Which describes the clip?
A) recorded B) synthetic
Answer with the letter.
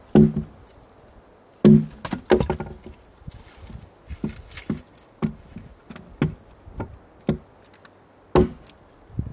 A